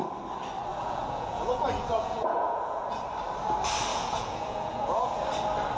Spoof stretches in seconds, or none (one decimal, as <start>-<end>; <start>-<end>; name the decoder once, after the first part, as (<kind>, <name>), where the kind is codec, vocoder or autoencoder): 0.7-3.0 (vocoder, Vocos); 3.9-5.2